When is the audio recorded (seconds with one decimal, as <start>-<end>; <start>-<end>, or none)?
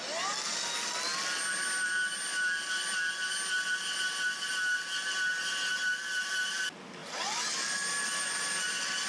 0.0-9.1